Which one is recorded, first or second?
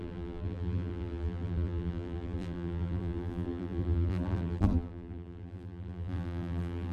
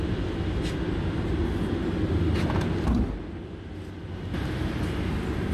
second